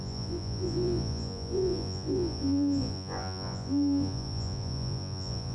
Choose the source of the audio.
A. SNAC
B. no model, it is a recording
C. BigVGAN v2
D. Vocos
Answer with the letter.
D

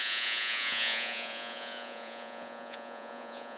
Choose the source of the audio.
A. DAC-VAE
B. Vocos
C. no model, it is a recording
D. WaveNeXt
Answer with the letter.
B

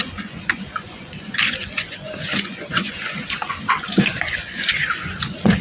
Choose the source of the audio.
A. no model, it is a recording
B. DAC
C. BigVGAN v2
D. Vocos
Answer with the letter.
D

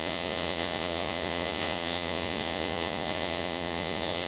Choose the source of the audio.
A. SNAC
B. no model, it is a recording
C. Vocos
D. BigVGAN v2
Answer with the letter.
C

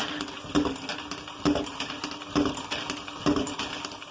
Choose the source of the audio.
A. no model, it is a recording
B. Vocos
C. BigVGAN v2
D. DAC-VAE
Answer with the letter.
A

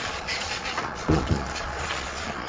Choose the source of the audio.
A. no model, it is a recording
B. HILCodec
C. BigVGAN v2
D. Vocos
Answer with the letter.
D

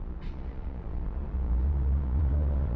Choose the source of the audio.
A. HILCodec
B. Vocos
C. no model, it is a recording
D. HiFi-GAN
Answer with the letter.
B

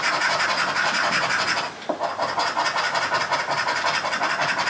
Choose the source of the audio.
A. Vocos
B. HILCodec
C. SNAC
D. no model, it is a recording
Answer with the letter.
D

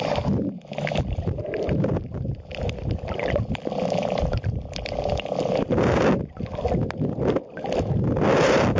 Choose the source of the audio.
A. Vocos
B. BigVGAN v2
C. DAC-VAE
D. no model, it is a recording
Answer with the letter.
D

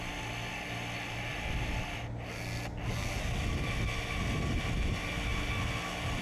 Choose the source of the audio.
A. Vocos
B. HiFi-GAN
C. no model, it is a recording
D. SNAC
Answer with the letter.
C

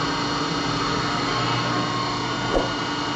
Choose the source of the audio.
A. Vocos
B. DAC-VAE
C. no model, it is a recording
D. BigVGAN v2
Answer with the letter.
C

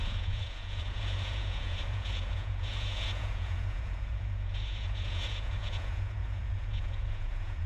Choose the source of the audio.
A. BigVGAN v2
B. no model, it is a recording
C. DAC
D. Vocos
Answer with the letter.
D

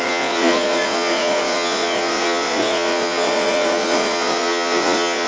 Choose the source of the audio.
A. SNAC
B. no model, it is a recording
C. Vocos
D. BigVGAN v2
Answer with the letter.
C